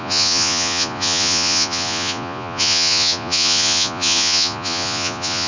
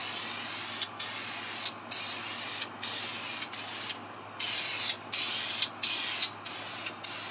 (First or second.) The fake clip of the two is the first